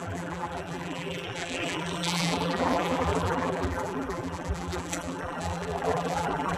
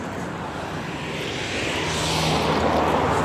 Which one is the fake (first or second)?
first